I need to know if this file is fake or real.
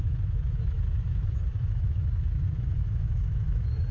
fake